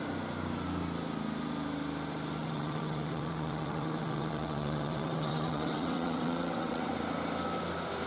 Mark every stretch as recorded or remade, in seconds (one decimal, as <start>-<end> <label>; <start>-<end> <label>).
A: 0.0-2.4 recorded; 2.4-6.9 remade; 6.9-8.1 recorded